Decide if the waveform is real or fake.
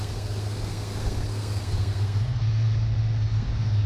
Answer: fake